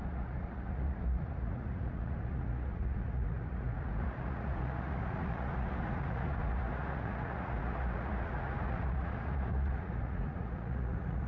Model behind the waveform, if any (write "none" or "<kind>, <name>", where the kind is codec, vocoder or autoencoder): vocoder, Vocos